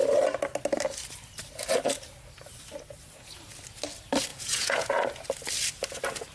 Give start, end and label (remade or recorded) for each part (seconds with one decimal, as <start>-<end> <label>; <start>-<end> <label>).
0.0-4.3 recorded; 4.3-4.9 remade; 4.9-6.3 recorded